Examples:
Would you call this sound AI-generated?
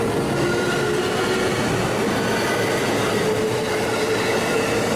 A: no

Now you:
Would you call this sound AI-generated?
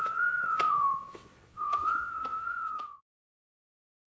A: yes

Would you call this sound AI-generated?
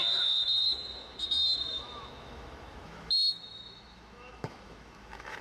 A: yes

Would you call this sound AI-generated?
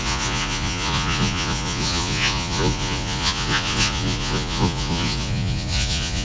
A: yes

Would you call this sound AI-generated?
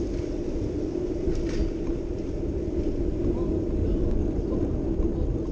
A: no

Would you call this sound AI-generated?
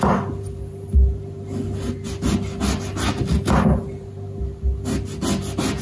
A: no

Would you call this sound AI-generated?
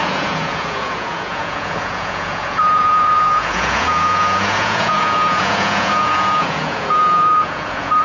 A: yes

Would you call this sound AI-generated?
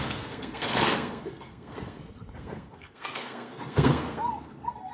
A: yes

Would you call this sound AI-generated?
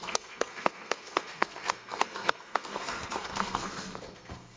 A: yes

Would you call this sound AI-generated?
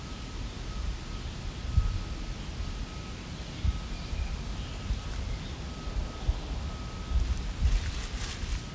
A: no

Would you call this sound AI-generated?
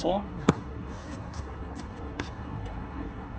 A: yes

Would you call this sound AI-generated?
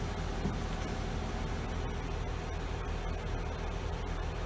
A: no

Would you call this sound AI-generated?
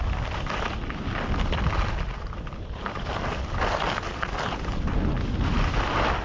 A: no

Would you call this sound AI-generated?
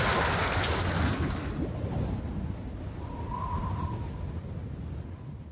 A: no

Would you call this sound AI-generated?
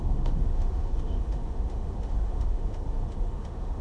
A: yes